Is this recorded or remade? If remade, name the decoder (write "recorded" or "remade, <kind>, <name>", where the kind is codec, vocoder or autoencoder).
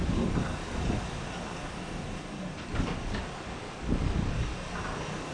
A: recorded